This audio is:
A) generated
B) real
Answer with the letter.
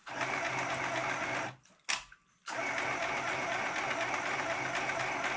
B